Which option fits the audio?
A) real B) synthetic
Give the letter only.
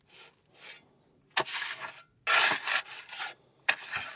A